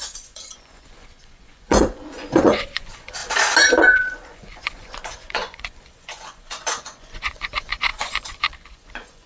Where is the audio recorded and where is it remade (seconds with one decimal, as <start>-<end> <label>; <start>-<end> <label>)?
0.0-3.2 remade; 3.2-3.8 recorded; 3.8-9.3 remade